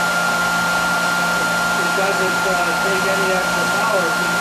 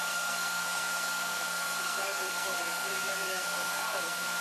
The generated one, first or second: second